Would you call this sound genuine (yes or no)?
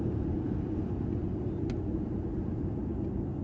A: yes